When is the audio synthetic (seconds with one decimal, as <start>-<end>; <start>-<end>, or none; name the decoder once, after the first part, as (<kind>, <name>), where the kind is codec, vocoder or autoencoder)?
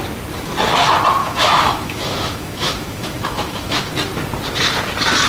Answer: 1.2-3.9 (autoencoder, DAC-VAE)